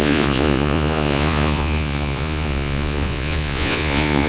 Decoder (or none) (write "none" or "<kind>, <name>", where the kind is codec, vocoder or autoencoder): vocoder, Vocos